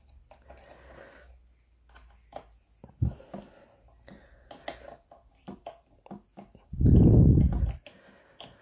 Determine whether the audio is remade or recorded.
recorded